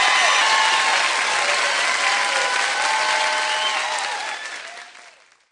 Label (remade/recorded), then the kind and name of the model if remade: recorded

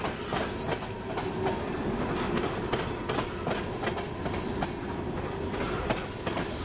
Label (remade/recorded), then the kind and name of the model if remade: recorded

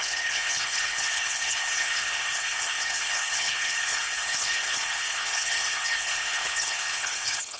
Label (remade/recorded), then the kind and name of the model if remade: remade, codec, HILCodec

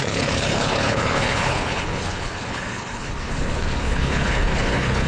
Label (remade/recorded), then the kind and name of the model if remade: remade, codec, HILCodec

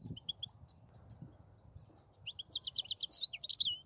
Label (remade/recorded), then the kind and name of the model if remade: recorded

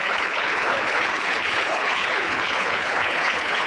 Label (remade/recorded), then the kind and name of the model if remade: remade, codec, HILCodec